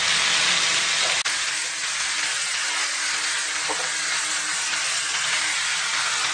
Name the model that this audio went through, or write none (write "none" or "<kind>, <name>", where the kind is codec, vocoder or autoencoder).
none